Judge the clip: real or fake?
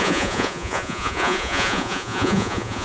fake